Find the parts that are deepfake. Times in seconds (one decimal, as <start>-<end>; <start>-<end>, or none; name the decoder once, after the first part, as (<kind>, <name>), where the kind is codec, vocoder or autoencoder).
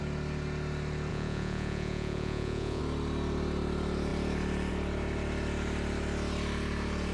1.1-2.8 (vocoder, Vocos)